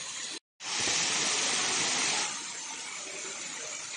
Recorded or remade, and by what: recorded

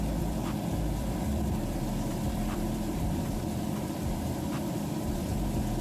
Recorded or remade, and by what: remade, vocoder, BigVGAN v2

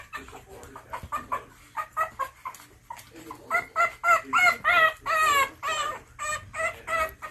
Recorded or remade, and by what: recorded